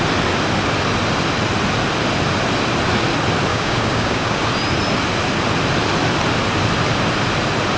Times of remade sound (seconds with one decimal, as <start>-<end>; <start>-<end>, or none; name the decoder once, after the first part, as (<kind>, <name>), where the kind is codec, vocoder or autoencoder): 3.5-4.4 (codec, DAC)